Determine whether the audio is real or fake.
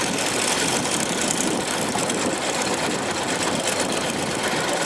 real